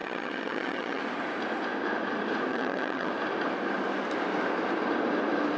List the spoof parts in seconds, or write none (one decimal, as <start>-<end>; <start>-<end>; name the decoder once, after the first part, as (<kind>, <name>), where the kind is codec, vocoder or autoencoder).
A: 0.0-1.0 (vocoder, HiFi-GAN); 2.5-3.1